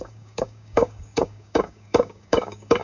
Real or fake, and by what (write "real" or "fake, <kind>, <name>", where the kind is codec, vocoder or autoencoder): fake, codec, DAC